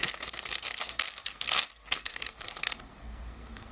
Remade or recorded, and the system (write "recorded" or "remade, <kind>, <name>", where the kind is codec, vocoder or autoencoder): remade, codec, SNAC